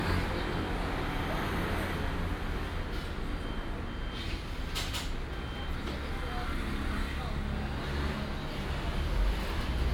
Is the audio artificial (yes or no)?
no